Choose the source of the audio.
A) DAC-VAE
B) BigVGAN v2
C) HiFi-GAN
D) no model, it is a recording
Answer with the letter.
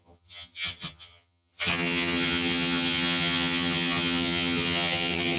C